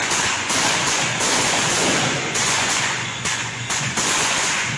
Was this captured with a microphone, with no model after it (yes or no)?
no